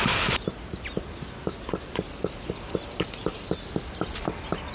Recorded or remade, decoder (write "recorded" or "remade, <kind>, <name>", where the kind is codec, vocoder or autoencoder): recorded